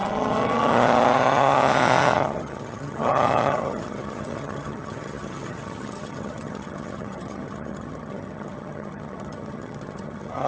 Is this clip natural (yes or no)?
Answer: no